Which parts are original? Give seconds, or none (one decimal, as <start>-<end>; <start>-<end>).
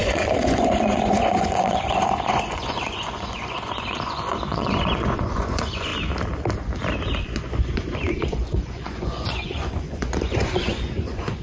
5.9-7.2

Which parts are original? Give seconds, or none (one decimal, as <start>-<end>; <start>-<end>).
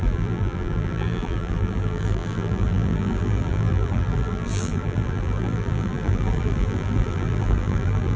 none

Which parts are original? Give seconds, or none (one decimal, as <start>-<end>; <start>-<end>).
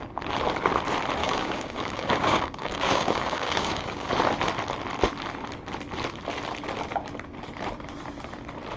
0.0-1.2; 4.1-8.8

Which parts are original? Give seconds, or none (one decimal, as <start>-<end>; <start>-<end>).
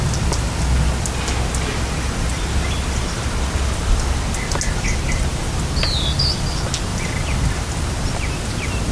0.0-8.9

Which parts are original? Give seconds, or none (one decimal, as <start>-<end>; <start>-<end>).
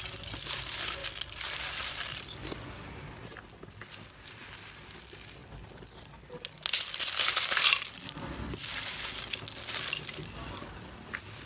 0.0-11.5